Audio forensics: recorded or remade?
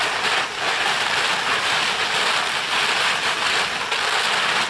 recorded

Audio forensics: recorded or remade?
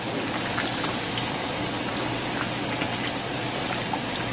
remade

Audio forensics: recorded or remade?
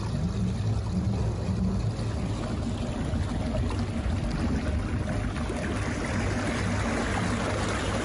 recorded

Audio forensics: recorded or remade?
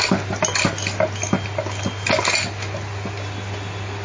recorded